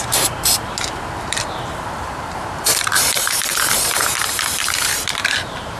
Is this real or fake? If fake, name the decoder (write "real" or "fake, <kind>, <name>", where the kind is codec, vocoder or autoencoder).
fake, vocoder, BigVGAN v2